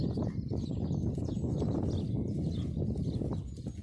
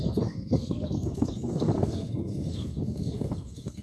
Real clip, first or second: first